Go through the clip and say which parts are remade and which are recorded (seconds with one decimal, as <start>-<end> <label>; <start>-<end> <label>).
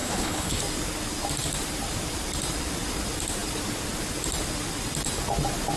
0.0-0.6 remade; 0.6-5.8 recorded